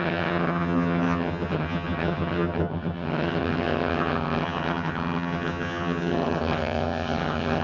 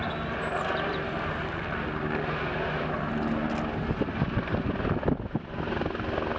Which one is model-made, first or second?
first